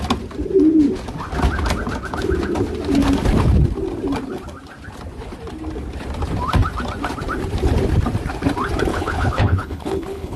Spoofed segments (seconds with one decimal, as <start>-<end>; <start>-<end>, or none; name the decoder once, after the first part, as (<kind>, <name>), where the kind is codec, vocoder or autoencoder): 8.9-10.4 (codec, HILCodec)